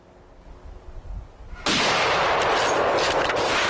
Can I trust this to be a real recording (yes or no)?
yes